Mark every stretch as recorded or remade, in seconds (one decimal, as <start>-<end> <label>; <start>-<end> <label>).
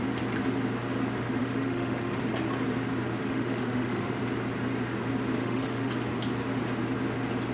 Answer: 0.0-1.4 recorded; 1.4-2.2 remade; 2.2-3.2 recorded; 3.2-4.2 remade; 4.2-5.4 recorded; 5.4-5.9 remade; 5.9-7.5 recorded